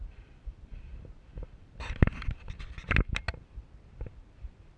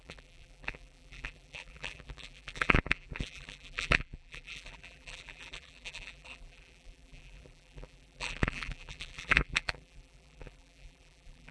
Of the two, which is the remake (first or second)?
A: second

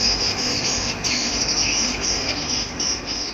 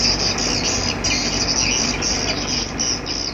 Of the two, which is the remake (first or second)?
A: first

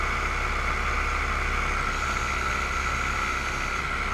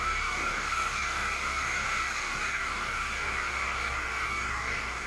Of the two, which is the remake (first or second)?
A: second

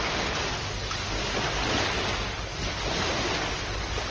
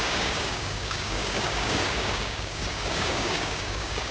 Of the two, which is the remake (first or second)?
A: second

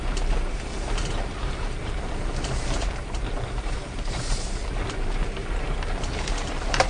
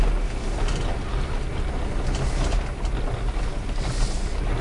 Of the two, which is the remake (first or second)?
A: first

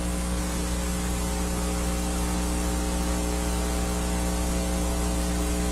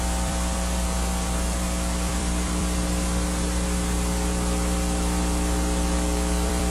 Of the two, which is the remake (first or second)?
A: second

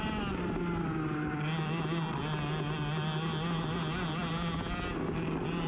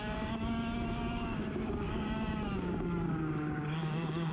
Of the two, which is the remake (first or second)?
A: second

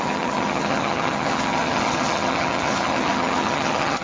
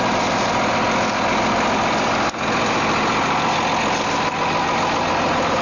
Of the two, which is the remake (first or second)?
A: first